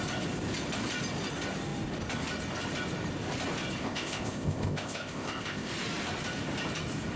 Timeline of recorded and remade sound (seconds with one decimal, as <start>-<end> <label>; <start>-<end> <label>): 0.0-3.8 recorded; 3.8-5.7 remade; 5.7-7.2 recorded